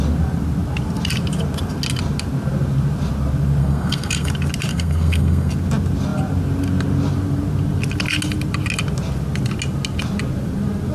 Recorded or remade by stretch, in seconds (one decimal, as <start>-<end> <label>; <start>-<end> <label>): 0.0-3.6 recorded; 3.6-4.3 remade; 4.3-4.7 recorded; 4.7-5.5 remade; 5.5-10.9 recorded